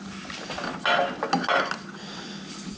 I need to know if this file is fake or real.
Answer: real